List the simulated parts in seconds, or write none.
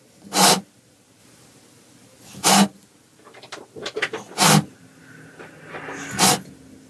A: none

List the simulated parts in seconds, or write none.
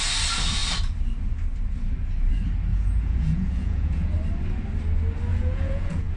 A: 2.7-4.1 (vocoder, Vocos); 5.3-6.2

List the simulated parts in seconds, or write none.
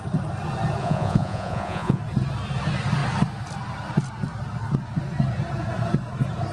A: 0.8-2.0 (vocoder, Vocos)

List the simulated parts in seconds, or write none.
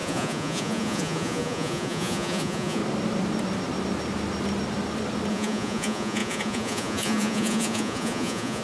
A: 0.0-2.8 (vocoder, Vocos); 5.3-8.6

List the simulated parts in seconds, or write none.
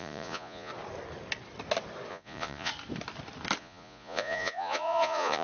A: 0.0-0.7 (vocoder, Vocos); 2.1-2.7; 3.6-5.4